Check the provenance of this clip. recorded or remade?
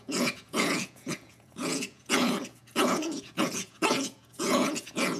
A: remade